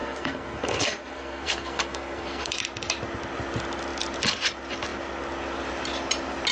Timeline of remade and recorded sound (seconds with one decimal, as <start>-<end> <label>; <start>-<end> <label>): 0.0-2.5 remade; 2.5-6.5 recorded